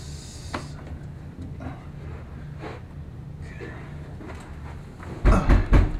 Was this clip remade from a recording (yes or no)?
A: no